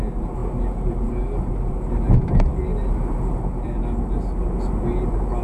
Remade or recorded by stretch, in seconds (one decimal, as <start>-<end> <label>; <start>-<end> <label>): 0.0-5.4 recorded